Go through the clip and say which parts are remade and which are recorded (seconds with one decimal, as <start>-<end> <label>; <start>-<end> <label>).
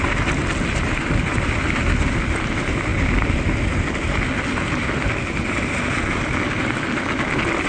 0.0-7.7 recorded